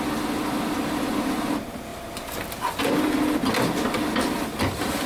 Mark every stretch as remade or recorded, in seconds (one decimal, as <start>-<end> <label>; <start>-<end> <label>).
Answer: 0.0-5.1 recorded